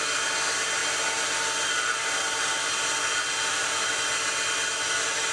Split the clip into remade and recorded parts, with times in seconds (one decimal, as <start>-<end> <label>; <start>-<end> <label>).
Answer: 0.0-5.3 recorded